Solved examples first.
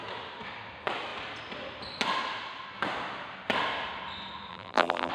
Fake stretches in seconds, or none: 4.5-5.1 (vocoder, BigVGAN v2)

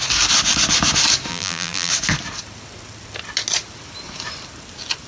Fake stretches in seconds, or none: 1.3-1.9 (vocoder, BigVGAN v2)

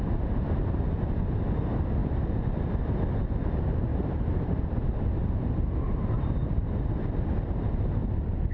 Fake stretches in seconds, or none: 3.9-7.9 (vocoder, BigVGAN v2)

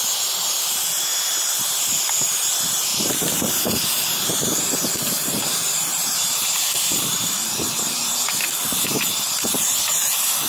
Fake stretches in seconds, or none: 1.1-2.0 (vocoder, BigVGAN v2); 2.9-7.5

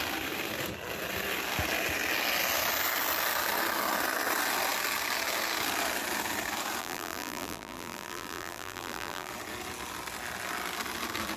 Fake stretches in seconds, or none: 6.8-9.3 (vocoder, BigVGAN v2)

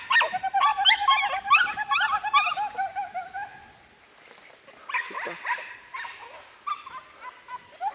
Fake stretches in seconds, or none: none

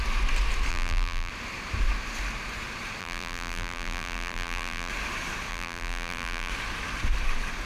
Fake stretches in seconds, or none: 0.7-1.3 (vocoder, BigVGAN v2); 3.0-4.9; 5.5-6.5